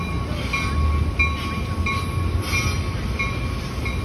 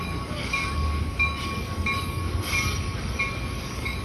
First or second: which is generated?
second